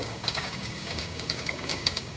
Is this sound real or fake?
fake